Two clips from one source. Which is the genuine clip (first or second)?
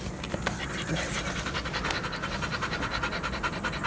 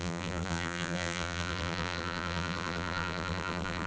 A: first